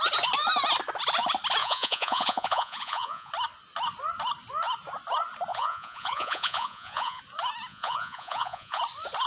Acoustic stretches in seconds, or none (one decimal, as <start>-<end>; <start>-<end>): 0.0-1.6; 3.3-5.5; 7.2-7.7; 8.8-9.3